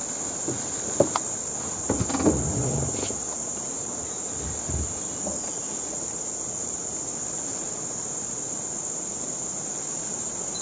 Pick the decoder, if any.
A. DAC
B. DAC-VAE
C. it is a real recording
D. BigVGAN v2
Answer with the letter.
C